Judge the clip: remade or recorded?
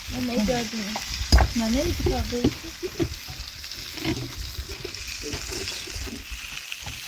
recorded